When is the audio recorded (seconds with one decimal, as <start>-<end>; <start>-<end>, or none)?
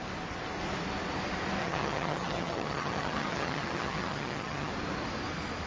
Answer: 0.0-1.6; 4.7-5.7